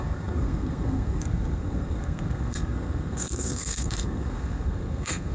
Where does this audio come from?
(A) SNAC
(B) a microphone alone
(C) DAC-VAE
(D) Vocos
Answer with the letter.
A